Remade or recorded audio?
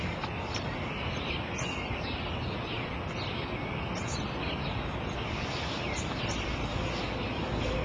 recorded